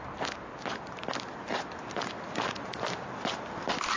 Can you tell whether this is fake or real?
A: real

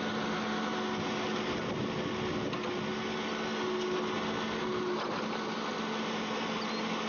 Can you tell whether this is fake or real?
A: real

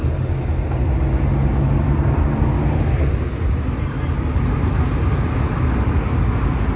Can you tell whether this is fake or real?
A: real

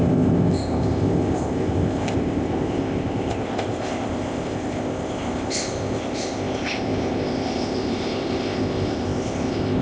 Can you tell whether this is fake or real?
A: fake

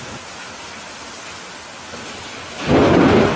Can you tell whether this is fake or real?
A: real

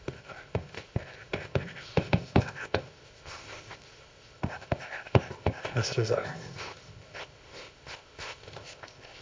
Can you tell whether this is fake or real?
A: fake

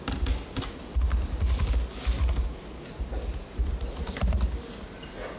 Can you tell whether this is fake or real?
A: real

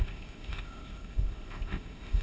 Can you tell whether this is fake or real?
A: fake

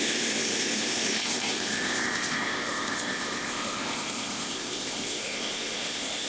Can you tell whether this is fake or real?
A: fake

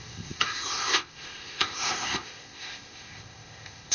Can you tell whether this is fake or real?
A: fake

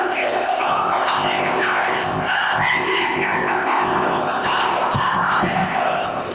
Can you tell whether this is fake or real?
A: fake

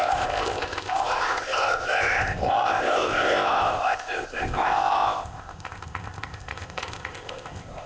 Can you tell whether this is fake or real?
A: fake